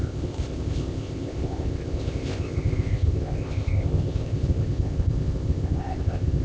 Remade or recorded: remade